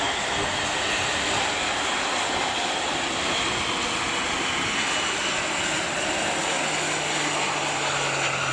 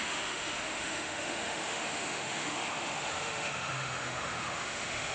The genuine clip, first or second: first